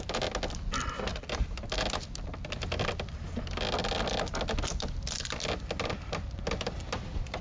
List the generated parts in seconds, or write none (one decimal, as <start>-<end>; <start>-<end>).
none